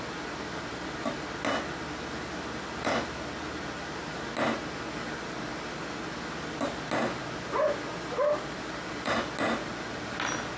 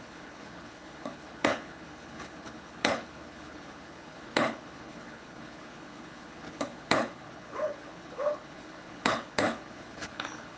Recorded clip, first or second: first